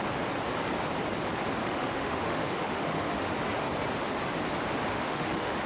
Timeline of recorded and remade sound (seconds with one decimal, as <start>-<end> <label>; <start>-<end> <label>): 0.0-1.6 recorded; 1.6-3.3 remade; 3.3-4.9 recorded; 4.9-5.7 remade